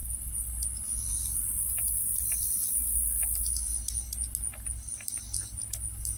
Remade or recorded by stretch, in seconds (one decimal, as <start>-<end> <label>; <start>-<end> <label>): 0.0-6.2 recorded